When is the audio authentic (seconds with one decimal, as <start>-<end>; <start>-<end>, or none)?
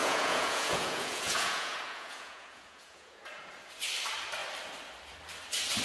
3.5-5.8